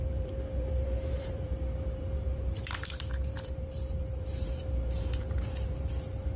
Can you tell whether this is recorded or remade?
remade